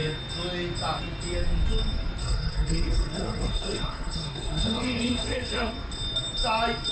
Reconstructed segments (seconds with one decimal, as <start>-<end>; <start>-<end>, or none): 2.2-5.7